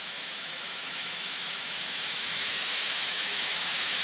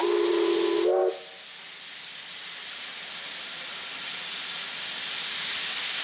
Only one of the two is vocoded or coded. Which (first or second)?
first